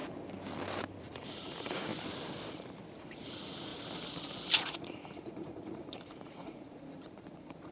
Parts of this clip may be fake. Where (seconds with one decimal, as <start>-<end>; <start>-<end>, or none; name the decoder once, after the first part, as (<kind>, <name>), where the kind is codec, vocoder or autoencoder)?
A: 1.0-1.9 (vocoder, Vocos); 3.0-3.7; 4.6-7.7